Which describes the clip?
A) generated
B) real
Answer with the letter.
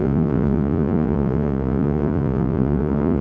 A